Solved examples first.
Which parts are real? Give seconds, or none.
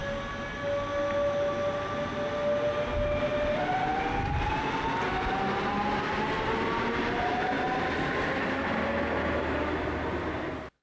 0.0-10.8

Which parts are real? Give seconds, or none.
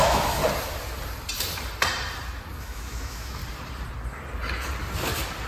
0.4-2.6; 3.4-5.5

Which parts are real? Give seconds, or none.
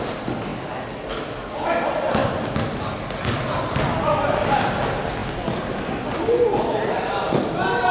0.0-7.9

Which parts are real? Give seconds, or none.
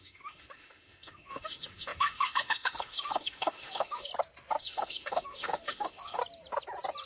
4.1-4.6; 6.2-7.1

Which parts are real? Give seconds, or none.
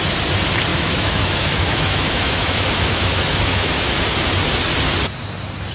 0.0-0.7; 4.0-5.7